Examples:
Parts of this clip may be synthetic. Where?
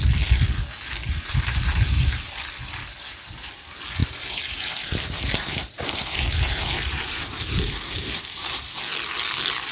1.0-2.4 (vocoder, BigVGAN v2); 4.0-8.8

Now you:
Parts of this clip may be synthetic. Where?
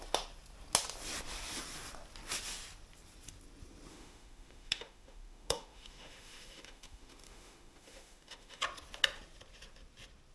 3.9-8.6 (autoencoder, DAC-VAE)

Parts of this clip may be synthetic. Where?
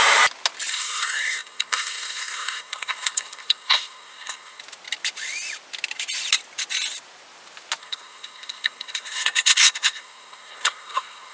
0.7-4.6 (codec, SNAC); 7.8-11.3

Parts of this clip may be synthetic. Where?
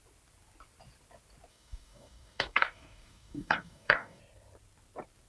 1.5-4.2 (codec, DAC)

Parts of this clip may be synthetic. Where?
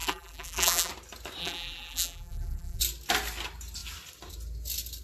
0.0-0.9 (vocoder, BigVGAN v2); 1.4-2.8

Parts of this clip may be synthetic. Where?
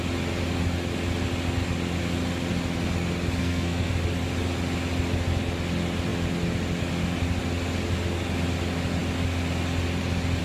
3.4-3.9 (codec, SNAC)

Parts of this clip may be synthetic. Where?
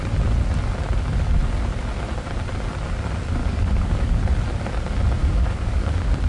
3.4-4.2 (codec, DAC); 5.2-6.3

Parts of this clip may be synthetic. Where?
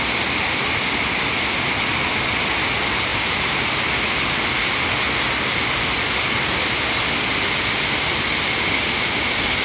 none